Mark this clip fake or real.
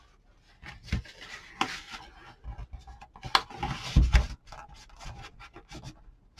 real